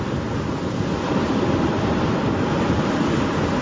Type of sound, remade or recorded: recorded